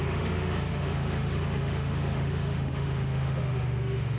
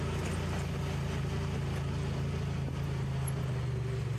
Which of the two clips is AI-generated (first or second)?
first